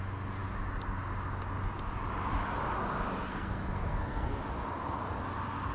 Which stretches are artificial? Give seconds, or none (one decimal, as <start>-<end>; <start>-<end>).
3.3-4.4